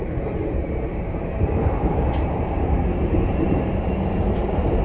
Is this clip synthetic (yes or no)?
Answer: yes